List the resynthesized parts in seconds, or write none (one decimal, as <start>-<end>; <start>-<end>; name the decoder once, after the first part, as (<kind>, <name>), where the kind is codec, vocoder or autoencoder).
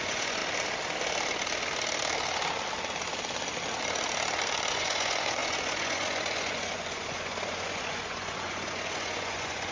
0.0-0.4 (vocoder, Vocos); 4.7-9.7